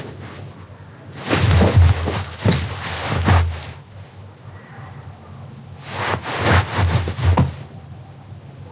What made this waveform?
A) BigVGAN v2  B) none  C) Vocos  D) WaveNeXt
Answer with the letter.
B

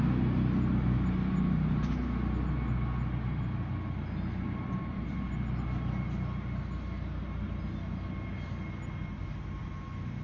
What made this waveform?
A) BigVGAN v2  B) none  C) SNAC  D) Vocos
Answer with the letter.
B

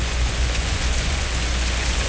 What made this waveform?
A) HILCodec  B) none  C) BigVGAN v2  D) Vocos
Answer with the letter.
D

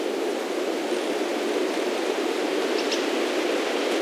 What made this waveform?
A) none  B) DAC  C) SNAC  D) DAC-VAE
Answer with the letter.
A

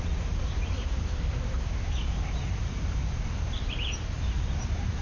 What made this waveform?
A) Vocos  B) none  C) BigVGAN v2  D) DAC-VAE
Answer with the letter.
C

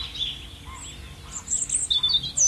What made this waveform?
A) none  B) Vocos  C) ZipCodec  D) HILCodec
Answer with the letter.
A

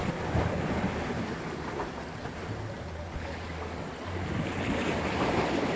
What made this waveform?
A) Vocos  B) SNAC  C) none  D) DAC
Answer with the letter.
C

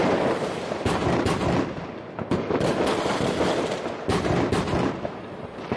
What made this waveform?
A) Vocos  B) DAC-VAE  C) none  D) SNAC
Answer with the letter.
C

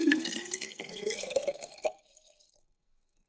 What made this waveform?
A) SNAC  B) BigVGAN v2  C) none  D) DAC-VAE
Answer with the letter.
A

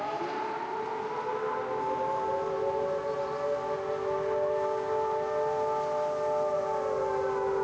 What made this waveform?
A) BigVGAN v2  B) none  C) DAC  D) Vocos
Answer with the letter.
B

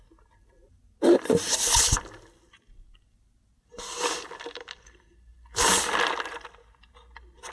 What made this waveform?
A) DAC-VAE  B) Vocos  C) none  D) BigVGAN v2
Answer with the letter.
C